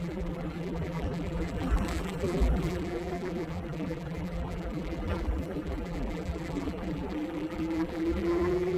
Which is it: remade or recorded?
remade